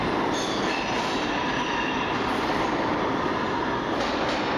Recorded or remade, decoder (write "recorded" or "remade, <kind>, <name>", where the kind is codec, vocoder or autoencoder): recorded